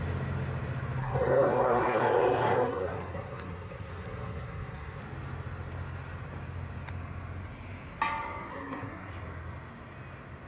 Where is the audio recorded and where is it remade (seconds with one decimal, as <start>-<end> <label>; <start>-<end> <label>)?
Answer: 0.0-1.0 recorded; 1.0-5.0 remade; 5.0-8.5 recorded; 8.5-9.1 remade; 9.1-10.5 recorded